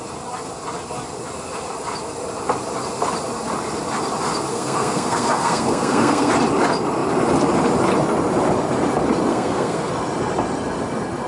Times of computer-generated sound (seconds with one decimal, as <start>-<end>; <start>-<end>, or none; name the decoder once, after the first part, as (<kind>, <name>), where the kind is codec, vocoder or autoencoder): 4.5-6.3 (codec, SNAC); 9.3-9.9